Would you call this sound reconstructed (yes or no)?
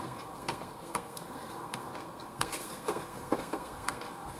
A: yes